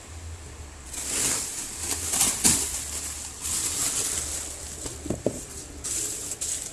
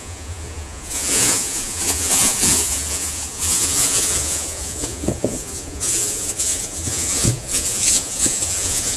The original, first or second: first